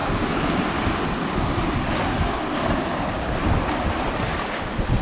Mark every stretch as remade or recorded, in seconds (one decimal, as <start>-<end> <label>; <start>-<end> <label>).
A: 0.0-5.0 recorded